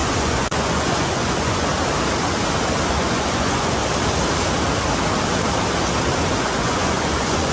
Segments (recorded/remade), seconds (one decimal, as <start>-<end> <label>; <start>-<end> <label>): 0.0-1.7 remade; 1.7-2.9 recorded; 2.9-3.8 remade; 3.8-6.4 recorded; 6.4-7.5 remade